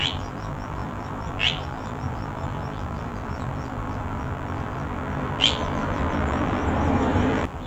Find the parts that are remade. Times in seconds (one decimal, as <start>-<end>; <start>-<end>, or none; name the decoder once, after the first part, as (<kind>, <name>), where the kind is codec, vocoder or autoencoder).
0.0-6.6 (vocoder, BigVGAN v2); 7.3-7.7